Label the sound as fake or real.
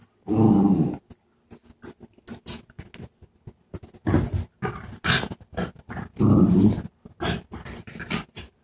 real